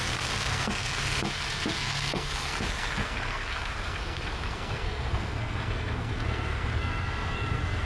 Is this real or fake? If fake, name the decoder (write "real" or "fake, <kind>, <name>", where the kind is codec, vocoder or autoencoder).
fake, codec, SNAC